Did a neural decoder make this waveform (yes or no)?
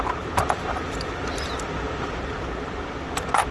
yes